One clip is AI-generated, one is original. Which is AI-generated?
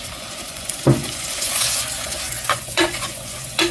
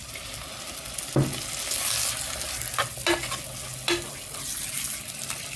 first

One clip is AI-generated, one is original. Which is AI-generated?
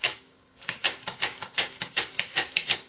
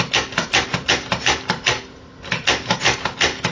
first